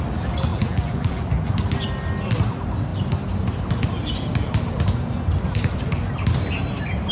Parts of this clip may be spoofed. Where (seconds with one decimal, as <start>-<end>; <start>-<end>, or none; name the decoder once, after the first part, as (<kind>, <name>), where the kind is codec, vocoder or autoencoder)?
0.5-1.5 (vocoder, BigVGAN v2)